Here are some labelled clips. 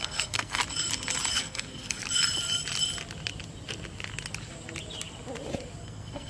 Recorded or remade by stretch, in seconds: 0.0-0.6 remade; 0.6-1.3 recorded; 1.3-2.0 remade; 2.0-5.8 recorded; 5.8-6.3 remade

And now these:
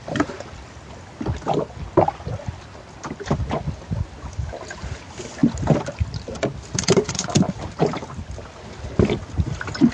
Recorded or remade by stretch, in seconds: 0.0-9.9 recorded

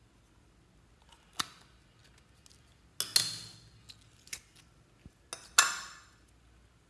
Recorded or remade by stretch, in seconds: 0.0-6.9 recorded

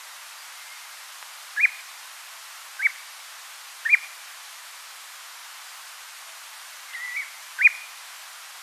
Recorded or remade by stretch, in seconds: 0.0-8.6 recorded